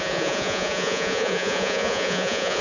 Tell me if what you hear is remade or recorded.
remade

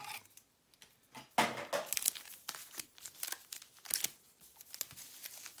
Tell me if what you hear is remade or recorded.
recorded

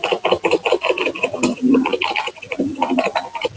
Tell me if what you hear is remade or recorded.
recorded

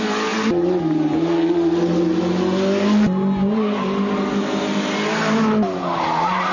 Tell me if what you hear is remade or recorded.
recorded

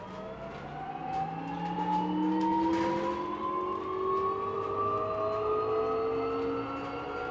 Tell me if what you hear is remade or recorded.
recorded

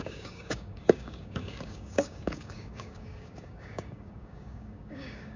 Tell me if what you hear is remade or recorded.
remade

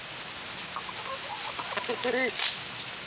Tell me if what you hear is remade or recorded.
recorded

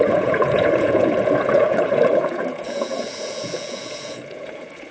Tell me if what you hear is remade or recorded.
remade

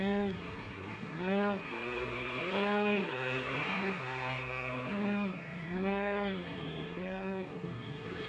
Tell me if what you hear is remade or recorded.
remade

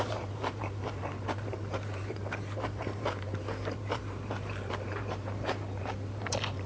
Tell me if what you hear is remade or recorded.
remade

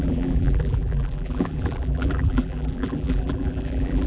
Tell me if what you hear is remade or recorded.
remade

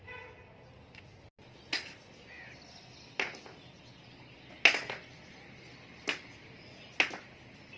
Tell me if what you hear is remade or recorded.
recorded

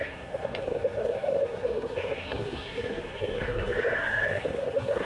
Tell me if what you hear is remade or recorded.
remade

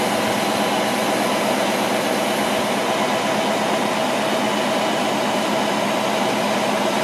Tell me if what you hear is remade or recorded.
recorded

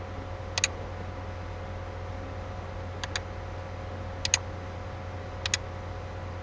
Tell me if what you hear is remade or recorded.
recorded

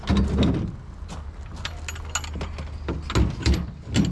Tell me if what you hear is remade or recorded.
recorded